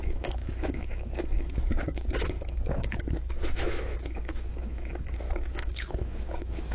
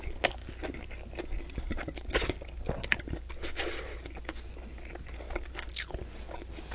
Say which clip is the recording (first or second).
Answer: second